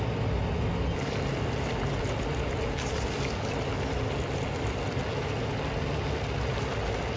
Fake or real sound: real